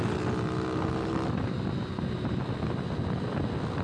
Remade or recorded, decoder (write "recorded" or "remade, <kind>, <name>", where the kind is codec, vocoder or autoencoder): recorded